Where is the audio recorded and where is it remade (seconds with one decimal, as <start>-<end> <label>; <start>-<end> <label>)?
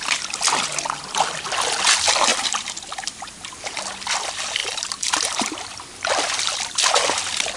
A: 0.0-4.6 recorded; 4.6-5.9 remade; 5.9-7.6 recorded